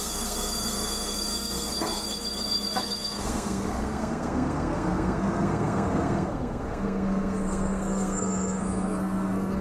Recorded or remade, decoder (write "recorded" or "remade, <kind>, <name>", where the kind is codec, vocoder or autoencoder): remade, codec, SNAC